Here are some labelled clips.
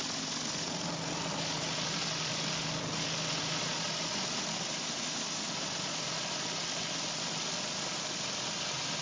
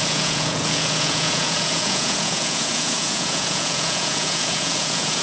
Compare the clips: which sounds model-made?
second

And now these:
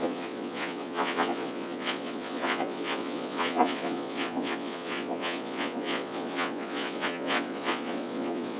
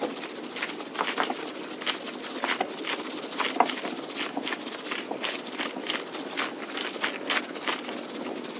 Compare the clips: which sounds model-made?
first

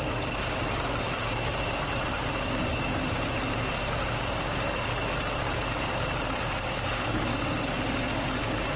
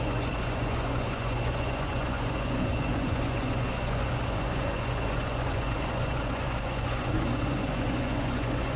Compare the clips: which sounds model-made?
second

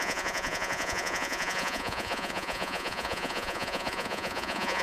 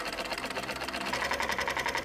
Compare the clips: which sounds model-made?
first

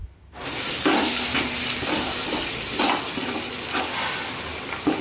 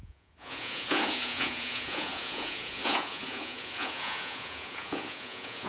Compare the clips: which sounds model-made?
second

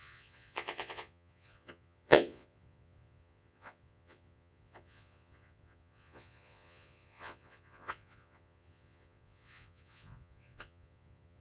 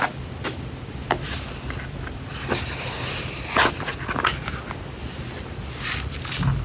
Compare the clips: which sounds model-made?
first